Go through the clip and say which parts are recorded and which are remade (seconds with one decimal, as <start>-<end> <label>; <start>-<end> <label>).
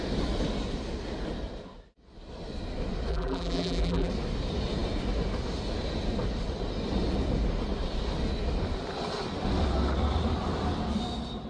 0.0-3.1 recorded; 3.1-4.1 remade; 4.1-11.5 recorded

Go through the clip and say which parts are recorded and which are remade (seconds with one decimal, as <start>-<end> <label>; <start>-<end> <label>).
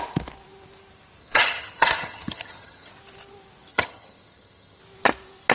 0.0-1.2 recorded; 1.2-2.9 remade; 2.9-3.7 recorded; 3.7-4.8 remade; 4.8-5.5 recorded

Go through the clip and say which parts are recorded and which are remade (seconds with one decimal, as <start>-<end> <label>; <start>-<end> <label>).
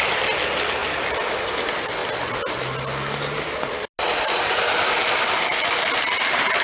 0.0-6.6 recorded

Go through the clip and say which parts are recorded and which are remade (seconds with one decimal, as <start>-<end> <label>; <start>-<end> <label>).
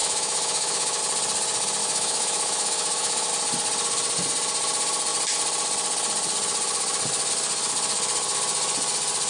0.0-1.0 remade; 1.0-1.8 recorded; 1.8-3.3 remade; 3.3-9.3 recorded